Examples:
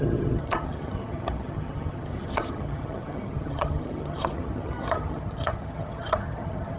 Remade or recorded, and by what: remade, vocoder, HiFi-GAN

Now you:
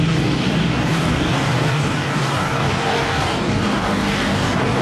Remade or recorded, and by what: remade, codec, DAC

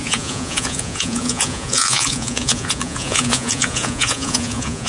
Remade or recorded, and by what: remade, vocoder, Vocos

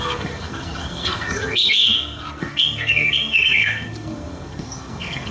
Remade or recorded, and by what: remade, codec, SNAC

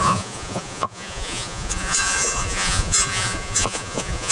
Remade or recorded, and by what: remade, vocoder, Vocos